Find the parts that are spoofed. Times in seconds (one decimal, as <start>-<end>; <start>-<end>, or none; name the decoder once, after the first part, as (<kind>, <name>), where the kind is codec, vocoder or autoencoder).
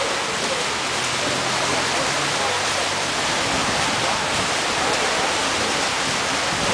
3.6-4.6 (vocoder, BigVGAN v2)